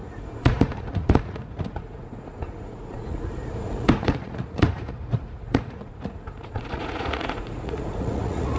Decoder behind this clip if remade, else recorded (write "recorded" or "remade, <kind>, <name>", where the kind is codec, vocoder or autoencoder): remade, vocoder, Vocos